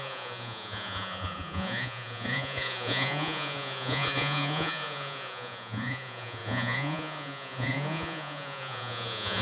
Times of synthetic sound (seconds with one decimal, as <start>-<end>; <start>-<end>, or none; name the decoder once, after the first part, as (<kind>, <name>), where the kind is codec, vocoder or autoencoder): 0.0-9.4 (vocoder, Vocos)